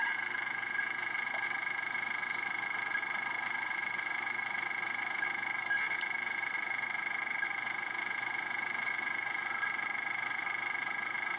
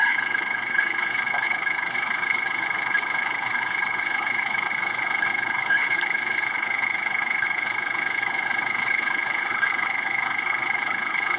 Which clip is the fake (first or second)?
second